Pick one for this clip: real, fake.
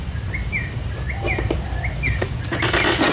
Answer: fake